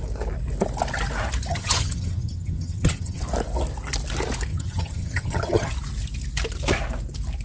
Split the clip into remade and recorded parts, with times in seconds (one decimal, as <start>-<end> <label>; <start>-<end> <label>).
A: 0.0-1.5 recorded; 1.5-3.2 remade; 3.2-4.5 recorded; 4.5-5.7 remade; 5.7-7.4 recorded